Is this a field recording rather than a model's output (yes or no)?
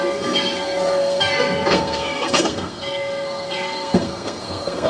no